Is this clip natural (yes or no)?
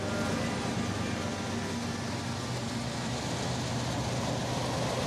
yes